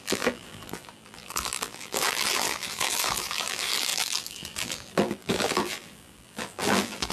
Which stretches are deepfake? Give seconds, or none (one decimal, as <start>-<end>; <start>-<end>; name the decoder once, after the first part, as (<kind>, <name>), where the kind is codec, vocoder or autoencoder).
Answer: 0.0-7.1 (vocoder, BigVGAN v2)